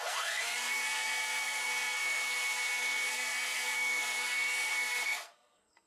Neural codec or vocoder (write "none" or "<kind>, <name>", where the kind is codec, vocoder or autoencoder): codec, SNAC